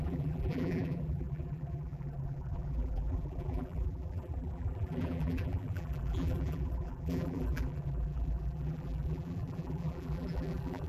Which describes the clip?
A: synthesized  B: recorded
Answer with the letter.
A